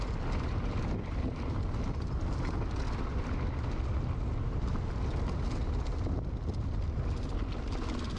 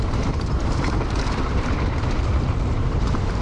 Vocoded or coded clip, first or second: second